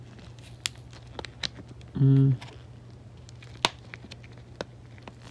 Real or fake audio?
real